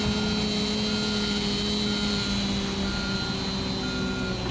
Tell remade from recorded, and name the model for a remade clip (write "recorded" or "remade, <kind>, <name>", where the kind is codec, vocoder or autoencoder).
recorded